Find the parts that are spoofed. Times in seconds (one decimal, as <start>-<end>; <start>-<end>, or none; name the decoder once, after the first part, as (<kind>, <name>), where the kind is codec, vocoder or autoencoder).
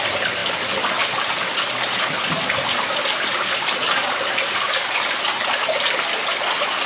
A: none